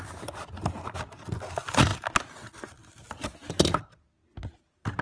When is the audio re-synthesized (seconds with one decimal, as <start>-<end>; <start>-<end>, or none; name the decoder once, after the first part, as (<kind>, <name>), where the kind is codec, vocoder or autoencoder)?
none